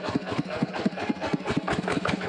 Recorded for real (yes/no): no